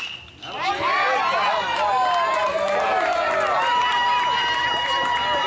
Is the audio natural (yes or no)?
yes